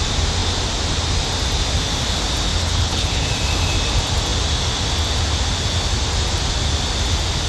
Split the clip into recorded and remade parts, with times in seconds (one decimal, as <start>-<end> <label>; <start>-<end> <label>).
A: 0.0-2.5 recorded; 2.5-3.3 remade; 3.3-7.5 recorded